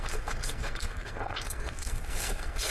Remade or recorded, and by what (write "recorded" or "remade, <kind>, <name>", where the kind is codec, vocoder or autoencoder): remade, codec, SNAC